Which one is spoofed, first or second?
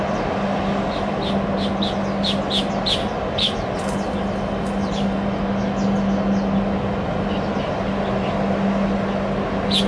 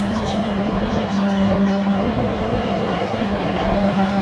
second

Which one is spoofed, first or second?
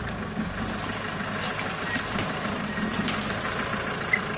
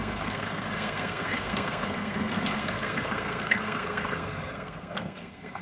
second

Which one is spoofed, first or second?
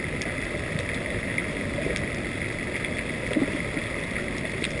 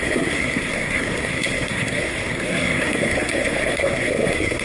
second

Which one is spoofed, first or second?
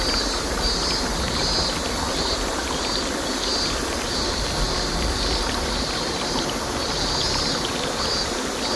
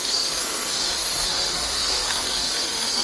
second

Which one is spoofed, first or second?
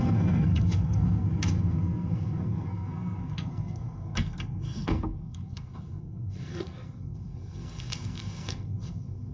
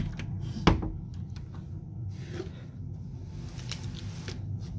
first